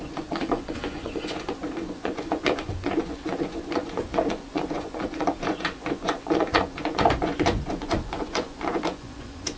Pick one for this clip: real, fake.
fake